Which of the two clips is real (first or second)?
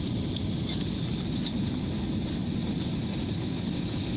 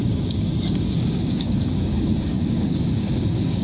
first